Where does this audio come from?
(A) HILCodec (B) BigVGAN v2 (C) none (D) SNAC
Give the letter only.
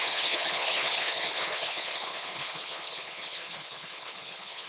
A